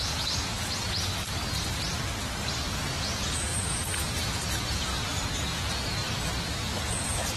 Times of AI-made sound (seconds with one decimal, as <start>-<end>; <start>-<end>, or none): 0.0-1.1; 2.7-6.0; 6.9-7.4